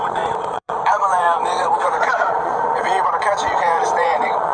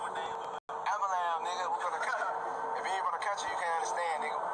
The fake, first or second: first